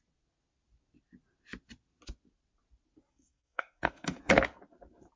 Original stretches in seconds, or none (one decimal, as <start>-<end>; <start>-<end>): 0.0-3.1; 4.2-5.2